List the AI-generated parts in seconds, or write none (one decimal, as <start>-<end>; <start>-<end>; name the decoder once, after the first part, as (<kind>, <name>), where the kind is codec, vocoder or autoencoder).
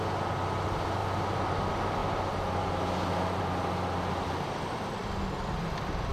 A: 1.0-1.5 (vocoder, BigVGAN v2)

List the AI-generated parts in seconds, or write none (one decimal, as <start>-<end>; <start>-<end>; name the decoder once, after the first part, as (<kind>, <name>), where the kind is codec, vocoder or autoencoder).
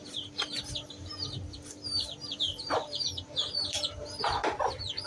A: 0.0-3.1 (vocoder, BigVGAN v2)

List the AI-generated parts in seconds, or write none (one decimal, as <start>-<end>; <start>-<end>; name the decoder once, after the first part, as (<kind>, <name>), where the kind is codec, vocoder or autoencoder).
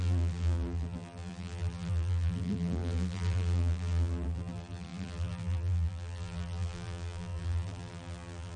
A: 0.0-8.6 (vocoder, BigVGAN v2)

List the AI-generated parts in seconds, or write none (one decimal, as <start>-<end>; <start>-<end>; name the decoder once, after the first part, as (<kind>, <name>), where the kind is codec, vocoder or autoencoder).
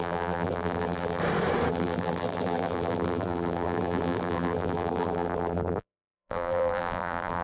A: 0.0-1.2 (vocoder, BigVGAN v2); 1.7-7.4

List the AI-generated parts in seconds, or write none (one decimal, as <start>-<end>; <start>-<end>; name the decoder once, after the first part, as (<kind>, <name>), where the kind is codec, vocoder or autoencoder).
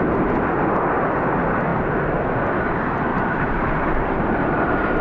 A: 3.1-5.0 (vocoder, BigVGAN v2)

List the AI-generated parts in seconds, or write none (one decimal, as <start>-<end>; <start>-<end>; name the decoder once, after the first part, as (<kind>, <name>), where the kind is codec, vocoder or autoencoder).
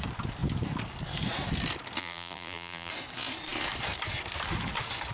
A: 2.0-2.9 (vocoder, BigVGAN v2)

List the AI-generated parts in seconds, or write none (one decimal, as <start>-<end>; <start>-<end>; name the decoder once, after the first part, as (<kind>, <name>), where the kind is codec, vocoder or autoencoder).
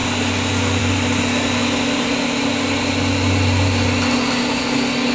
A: 0.0-0.8 (vocoder, BigVGAN v2)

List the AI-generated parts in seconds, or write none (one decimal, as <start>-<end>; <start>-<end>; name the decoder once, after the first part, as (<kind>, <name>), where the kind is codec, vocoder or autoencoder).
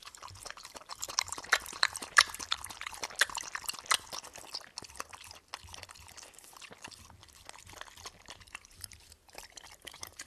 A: 0.0-3.0 (vocoder, BigVGAN v2); 8.0-10.3